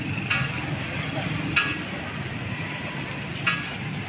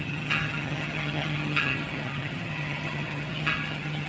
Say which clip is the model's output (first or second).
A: second